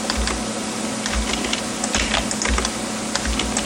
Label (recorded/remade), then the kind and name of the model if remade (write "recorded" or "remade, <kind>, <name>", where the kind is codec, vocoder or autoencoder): recorded